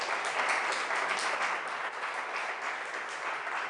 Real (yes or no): yes